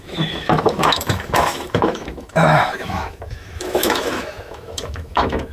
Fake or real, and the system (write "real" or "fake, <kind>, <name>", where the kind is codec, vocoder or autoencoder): fake, autoencoder, DAC-VAE